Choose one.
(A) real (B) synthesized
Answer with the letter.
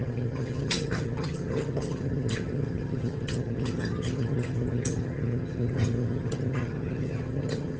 B